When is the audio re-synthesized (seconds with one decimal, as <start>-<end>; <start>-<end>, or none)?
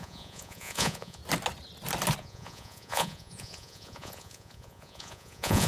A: 0.0-1.2; 2.2-5.7